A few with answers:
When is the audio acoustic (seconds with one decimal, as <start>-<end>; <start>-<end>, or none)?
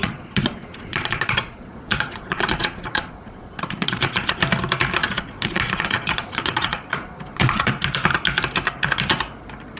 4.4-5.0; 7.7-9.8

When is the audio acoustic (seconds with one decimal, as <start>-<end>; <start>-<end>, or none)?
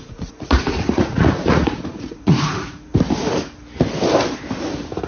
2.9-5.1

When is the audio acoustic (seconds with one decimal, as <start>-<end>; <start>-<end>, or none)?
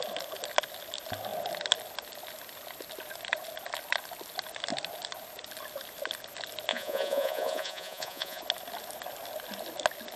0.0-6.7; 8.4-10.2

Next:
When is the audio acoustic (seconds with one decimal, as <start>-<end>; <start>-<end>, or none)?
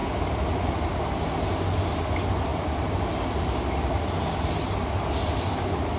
0.0-6.0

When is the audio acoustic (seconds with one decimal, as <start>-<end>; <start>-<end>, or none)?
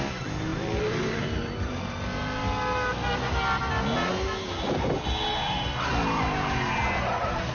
0.0-7.5